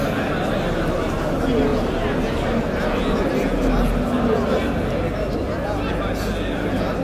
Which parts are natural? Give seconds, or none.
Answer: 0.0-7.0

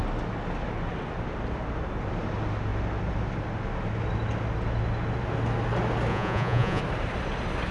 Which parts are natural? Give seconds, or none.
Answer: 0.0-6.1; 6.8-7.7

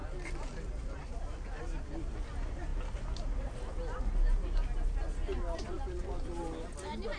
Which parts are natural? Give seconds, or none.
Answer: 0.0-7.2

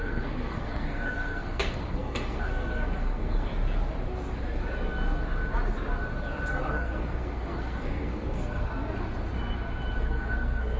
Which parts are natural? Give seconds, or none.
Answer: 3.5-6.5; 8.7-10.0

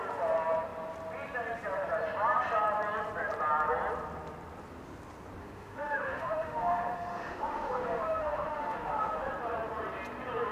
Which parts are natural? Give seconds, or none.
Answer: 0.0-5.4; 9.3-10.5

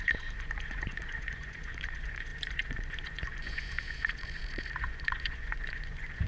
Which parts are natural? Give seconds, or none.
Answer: none

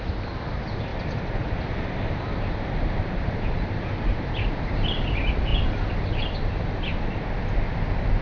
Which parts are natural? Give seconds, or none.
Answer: 0.0-8.2